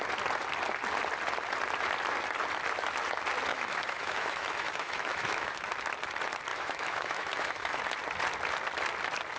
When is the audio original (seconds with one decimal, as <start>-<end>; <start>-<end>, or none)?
0.0-3.5; 5.7-6.5; 7.8-9.4